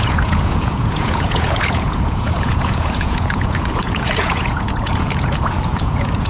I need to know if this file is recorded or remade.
remade